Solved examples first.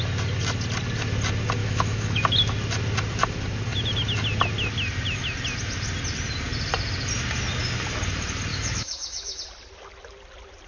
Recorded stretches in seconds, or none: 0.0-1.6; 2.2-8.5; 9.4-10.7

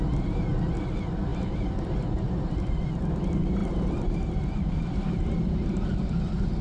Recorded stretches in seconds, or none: 0.0-3.6; 6.1-6.6

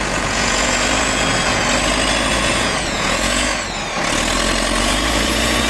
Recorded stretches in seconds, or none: 1.6-2.3; 3.5-4.8

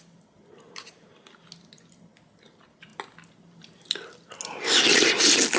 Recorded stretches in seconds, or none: 0.0-5.6